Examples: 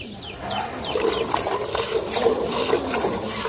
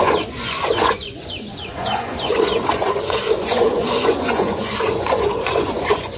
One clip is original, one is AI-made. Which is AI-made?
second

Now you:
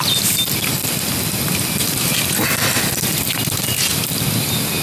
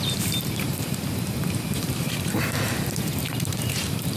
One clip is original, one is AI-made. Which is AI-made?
second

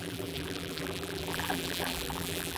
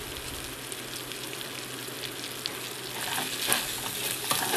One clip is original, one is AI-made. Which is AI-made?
first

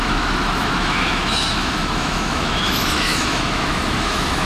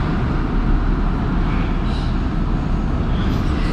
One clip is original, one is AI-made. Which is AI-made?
first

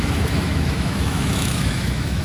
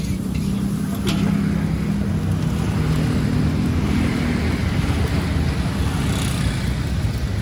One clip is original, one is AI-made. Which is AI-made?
first